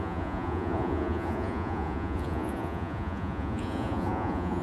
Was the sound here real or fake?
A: fake